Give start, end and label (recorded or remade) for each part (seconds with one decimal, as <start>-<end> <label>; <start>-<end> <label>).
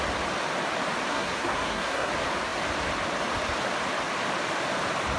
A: 0.0-1.1 recorded; 1.1-2.1 remade; 2.1-5.2 recorded